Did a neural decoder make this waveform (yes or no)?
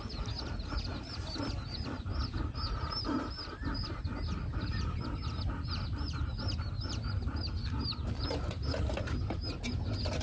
no